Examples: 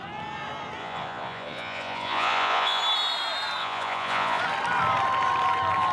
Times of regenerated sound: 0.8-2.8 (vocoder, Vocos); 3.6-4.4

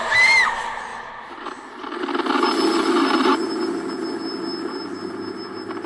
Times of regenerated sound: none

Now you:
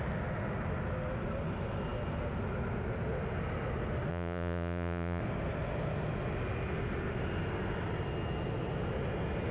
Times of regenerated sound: 4.1-5.2 (vocoder, Vocos)

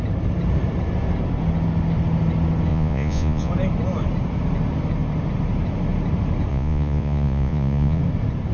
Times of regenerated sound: 2.7-3.5 (vocoder, Vocos); 6.5-8.0